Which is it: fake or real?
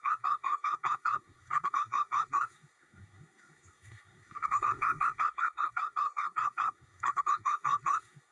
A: fake